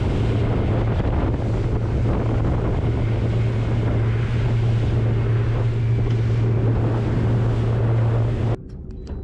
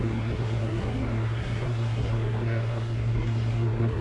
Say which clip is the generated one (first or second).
second